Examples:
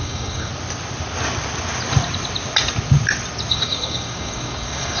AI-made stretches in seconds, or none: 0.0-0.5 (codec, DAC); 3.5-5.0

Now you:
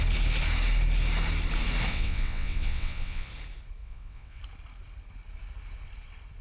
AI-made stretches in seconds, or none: 1.9-3.3 (vocoder, WaveNeXt); 3.8-4.4